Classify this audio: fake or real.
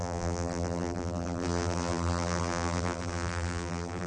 fake